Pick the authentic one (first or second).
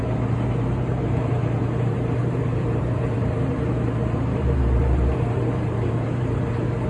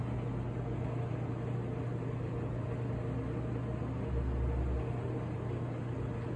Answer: second